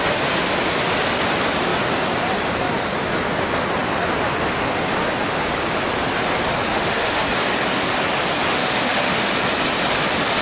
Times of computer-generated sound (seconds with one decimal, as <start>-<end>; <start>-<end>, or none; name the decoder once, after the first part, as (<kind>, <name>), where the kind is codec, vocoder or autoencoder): 6.7-7.2 (autoencoder, DAC-VAE); 8.5-9.3